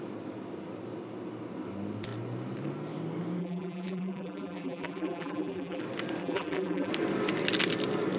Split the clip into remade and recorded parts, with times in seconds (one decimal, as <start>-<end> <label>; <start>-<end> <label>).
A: 0.0-3.4 recorded; 3.4-5.8 remade; 5.8-6.2 recorded; 6.2-6.9 remade; 6.9-8.2 recorded